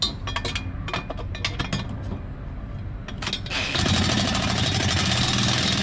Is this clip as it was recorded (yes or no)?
yes